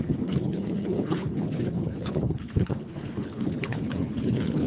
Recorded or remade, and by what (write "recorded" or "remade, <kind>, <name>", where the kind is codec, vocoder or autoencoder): remade, codec, HILCodec